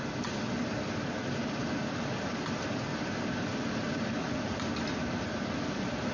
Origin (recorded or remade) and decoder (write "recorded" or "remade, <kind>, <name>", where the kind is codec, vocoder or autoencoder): recorded